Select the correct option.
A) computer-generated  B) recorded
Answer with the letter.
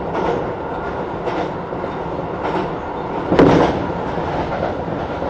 B